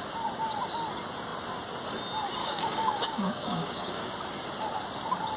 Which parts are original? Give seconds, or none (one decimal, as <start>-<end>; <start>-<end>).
0.0-2.4; 4.1-5.4